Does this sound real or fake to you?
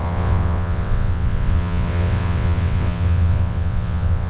fake